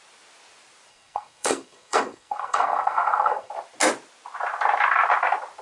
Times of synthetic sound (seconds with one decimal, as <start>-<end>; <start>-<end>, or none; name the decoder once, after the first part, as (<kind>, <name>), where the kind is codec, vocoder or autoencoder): 0.9-3.5 (codec, SNAC)